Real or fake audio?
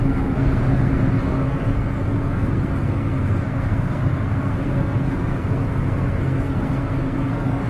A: fake